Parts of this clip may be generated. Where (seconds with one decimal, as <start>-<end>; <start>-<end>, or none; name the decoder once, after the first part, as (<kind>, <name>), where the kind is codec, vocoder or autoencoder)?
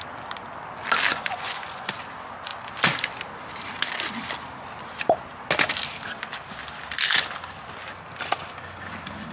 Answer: 1.1-1.9 (vocoder, Vocos)